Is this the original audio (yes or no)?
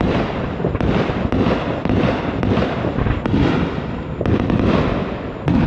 yes